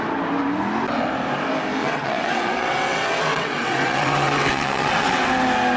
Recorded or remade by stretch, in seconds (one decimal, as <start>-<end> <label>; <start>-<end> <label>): 0.0-1.8 recorded; 1.8-5.3 remade; 5.3-5.8 recorded

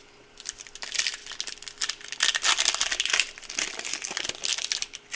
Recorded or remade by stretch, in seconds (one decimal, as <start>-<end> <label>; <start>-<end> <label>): 0.0-5.2 recorded

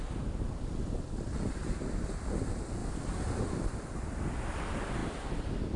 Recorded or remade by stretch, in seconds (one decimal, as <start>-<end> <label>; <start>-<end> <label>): 0.0-5.8 recorded

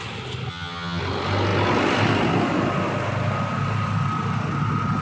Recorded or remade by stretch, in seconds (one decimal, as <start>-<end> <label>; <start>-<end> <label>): 0.0-0.5 recorded; 0.5-1.0 remade; 1.0-5.0 recorded

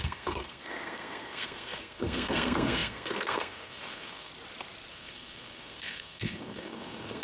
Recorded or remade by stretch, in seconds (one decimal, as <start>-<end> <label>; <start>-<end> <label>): 0.0-4.3 remade; 4.3-4.9 recorded; 4.9-7.2 remade

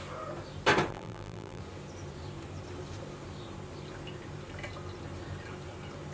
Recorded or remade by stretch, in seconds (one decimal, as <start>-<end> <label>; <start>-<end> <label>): 0.0-0.9 recorded; 0.9-1.6 remade; 1.6-6.1 recorded

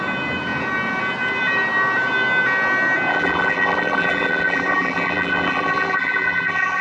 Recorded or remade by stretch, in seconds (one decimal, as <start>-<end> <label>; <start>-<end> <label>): 0.0-3.1 recorded; 3.1-6.8 remade